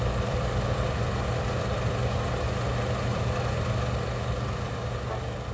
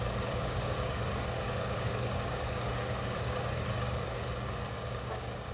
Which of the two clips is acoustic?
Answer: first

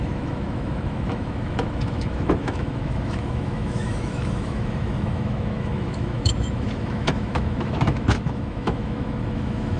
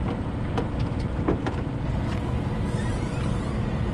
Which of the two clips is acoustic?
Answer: second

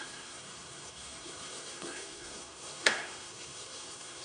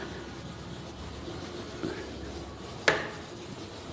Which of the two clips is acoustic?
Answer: second